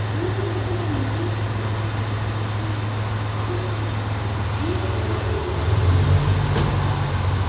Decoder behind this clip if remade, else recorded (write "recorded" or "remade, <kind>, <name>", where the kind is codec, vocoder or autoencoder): recorded